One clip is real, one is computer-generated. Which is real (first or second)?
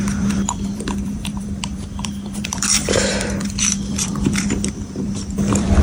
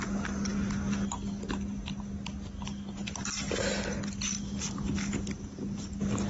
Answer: second